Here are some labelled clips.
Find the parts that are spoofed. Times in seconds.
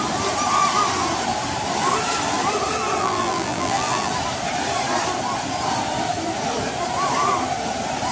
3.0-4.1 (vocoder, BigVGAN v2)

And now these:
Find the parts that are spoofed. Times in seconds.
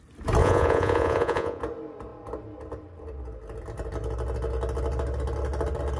0.4-1.6 (vocoder, Vocos)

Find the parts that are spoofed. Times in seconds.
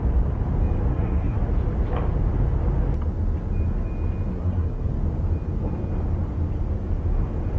0.9-1.4 (codec, SNAC); 4.3-4.9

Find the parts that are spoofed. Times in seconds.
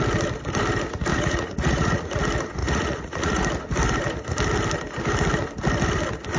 1.1-2.2 (vocoder, Vocos); 2.6-3.4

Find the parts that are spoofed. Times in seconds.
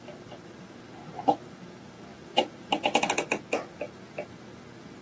none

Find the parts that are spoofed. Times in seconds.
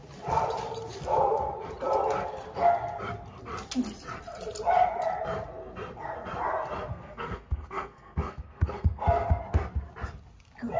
6.9-9.4 (codec, SNAC)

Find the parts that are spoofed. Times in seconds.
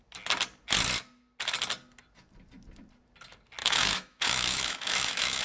3.6-5.4 (autoencoder, DAC-VAE)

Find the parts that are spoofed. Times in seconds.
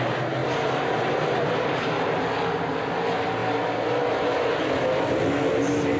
0.4-2.2 (vocoder, BigVGAN v2)